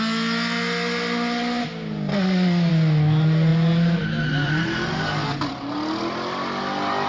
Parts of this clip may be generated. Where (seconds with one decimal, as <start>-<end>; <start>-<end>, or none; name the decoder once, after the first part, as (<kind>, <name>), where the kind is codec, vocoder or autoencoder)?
2.1-2.7 (codec, SNAC)